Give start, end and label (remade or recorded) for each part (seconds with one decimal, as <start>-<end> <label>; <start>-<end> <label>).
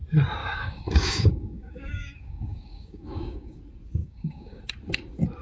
0.0-0.4 recorded; 0.4-3.6 remade; 3.6-4.0 recorded; 4.0-4.6 remade; 4.6-5.4 recorded